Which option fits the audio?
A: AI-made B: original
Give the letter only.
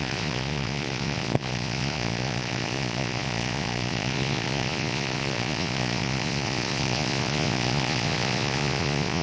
A